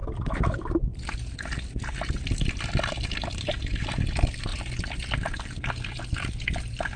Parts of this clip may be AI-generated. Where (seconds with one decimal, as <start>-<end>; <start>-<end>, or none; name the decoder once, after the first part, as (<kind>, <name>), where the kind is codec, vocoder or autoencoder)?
none